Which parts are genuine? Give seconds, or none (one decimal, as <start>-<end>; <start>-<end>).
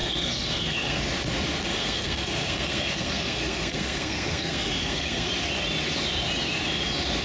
1.0-1.7; 5.3-7.2